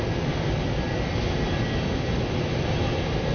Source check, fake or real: real